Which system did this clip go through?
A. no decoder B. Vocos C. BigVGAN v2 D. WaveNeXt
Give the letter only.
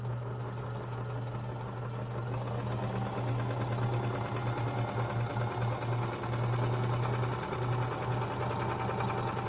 A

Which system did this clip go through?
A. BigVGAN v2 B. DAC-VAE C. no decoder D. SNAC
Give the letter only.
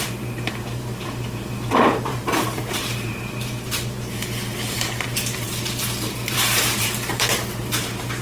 A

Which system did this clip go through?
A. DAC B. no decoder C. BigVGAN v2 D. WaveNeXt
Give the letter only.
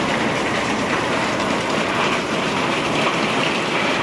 C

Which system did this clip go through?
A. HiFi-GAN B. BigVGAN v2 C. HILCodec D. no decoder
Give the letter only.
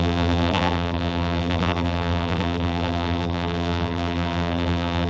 B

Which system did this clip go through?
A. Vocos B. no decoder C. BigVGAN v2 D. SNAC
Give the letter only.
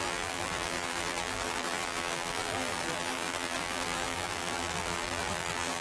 C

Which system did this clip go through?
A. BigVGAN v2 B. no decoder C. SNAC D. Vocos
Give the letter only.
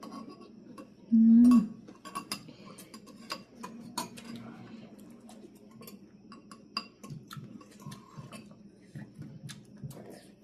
B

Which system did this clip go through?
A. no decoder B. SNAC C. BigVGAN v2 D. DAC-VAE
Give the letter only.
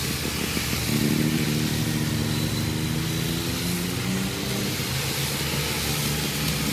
A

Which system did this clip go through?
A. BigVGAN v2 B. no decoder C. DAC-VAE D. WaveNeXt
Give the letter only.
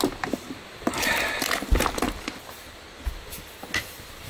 B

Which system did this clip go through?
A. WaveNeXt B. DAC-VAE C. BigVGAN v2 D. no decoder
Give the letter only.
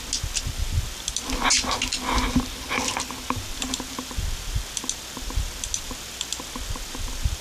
D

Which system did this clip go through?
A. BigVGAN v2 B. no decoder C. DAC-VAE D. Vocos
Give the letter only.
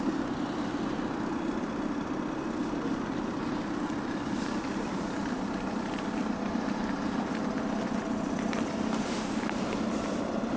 A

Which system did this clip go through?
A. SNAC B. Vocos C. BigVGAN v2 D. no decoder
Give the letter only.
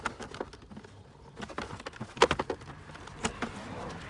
D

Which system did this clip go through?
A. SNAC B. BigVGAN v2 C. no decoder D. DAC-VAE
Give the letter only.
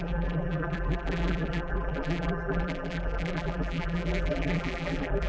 B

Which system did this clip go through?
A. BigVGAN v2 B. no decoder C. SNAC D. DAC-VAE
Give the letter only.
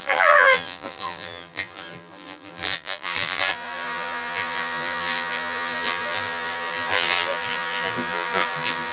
A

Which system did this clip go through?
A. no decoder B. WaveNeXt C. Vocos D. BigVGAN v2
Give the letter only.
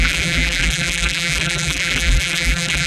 D